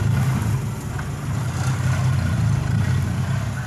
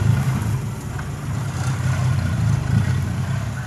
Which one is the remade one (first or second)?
second